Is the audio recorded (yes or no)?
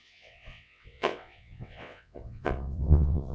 no